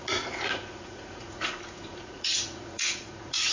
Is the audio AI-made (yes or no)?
yes